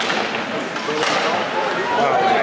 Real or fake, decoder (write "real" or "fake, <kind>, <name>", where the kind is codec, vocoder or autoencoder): real